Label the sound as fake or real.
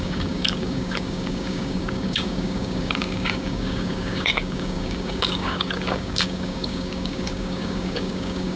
fake